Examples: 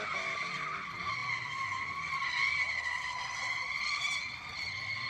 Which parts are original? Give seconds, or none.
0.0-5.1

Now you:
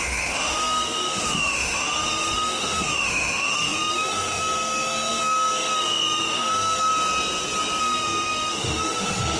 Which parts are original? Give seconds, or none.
6.9-7.8

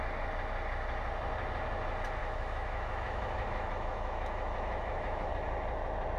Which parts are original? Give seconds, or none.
0.0-2.2; 5.3-6.2